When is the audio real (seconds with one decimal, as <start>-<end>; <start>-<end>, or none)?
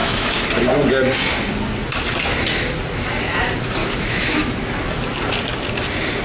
0.5-3.8; 4.5-6.2